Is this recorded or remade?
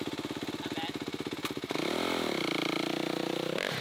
recorded